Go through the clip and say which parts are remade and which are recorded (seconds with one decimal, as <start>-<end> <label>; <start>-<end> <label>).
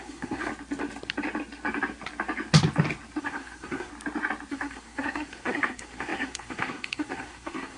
0.0-0.5 remade; 0.5-3.2 recorded; 3.2-3.9 remade; 3.9-4.5 recorded; 4.5-7.8 remade